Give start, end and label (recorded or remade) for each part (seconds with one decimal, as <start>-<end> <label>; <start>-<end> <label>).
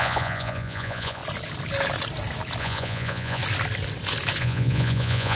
0.0-1.2 remade; 1.2-2.6 recorded; 2.6-3.4 remade; 3.4-4.4 recorded; 4.4-5.4 remade